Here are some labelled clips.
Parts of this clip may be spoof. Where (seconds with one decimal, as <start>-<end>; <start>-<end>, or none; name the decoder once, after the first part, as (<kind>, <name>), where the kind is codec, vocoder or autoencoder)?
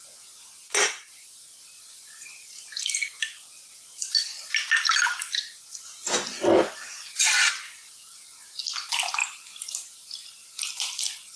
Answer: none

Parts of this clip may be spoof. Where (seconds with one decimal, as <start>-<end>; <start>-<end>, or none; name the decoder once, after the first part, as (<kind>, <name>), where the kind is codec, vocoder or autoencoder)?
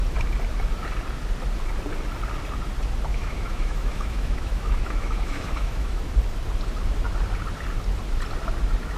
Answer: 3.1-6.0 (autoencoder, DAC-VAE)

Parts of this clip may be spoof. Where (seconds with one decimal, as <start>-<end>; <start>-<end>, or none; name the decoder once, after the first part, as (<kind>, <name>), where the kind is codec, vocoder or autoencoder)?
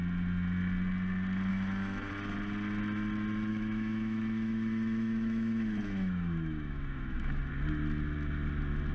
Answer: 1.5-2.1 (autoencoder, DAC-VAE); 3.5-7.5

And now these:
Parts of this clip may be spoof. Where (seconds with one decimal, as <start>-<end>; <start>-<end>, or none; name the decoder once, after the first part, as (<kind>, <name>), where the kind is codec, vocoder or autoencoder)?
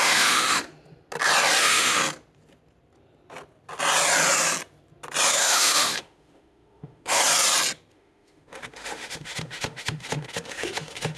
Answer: 0.0-0.7 (autoencoder, DAC-VAE); 1.6-2.0; 5.3-7.2; 7.9-11.2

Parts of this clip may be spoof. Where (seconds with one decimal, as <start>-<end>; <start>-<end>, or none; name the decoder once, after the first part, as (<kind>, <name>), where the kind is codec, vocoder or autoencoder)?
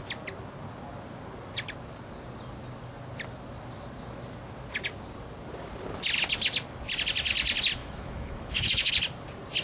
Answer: 7.8-8.9 (autoencoder, DAC-VAE)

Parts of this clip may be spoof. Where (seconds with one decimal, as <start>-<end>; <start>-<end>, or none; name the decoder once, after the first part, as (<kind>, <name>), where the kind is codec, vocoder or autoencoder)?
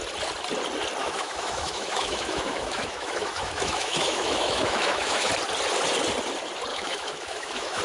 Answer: 1.0-5.3 (autoencoder, DAC-VAE); 6.7-7.8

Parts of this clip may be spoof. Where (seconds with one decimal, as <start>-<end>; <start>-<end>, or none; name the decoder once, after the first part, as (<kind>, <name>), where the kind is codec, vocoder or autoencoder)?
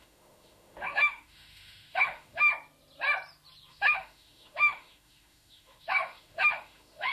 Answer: 0.0-2.5 (autoencoder, DAC-VAE); 3.7-7.1